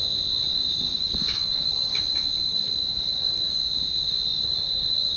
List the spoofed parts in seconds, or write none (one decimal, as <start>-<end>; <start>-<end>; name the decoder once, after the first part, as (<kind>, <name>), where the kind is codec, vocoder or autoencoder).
0.5-3.6 (codec, DAC); 4.3-5.2